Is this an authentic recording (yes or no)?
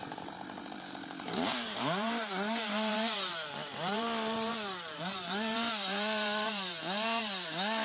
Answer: no